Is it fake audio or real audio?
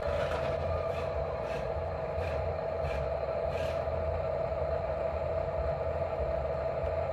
fake